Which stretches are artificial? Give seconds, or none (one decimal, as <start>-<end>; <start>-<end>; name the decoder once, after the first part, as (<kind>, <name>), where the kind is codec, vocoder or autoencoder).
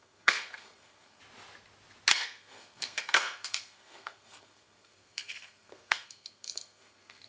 0.0-1.2 (codec, SNAC); 2.1-7.3